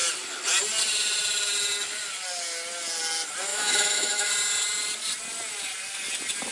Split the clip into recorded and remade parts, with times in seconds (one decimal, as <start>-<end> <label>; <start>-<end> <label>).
0.0-3.5 recorded; 3.5-4.3 remade; 4.3-6.5 recorded